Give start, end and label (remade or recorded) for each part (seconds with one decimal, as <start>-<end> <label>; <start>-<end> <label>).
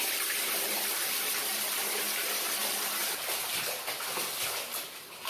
0.0-5.3 recorded